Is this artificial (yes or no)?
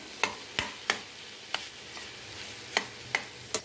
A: no